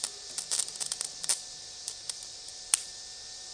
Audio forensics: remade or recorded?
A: recorded